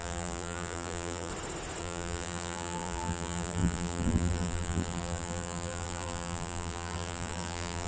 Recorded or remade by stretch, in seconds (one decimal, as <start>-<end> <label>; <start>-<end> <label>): 0.0-1.3 remade; 1.3-1.8 recorded; 1.8-7.9 remade